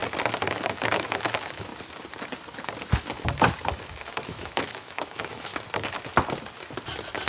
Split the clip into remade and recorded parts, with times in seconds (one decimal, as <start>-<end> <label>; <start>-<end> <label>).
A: 0.0-0.5 recorded; 0.5-1.7 remade; 1.7-3.9 recorded; 3.9-5.5 remade; 5.5-7.3 recorded